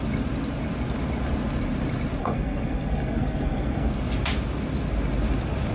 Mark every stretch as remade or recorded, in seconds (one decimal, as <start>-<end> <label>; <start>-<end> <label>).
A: 0.0-2.2 recorded; 2.2-3.9 remade; 3.9-5.7 recorded